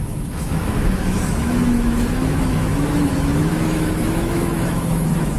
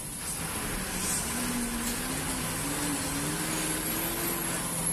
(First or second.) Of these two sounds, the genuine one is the second